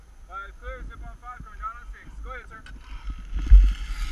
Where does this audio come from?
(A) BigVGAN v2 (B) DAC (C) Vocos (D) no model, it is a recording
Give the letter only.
D